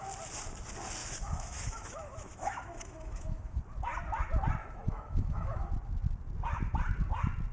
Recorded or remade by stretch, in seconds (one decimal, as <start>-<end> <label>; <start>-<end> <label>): 0.0-1.0 recorded; 1.0-3.6 remade; 3.6-4.6 recorded; 4.6-5.7 remade; 5.7-7.5 recorded